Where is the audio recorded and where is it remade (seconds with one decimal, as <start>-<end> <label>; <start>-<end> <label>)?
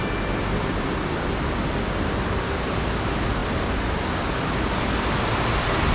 0.0-5.9 recorded